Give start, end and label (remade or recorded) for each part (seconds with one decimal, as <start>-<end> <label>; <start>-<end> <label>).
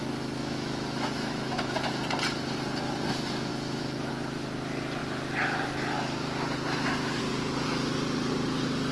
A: 0.0-1.9 remade; 1.9-3.5 recorded; 3.5-4.1 remade; 4.1-8.9 recorded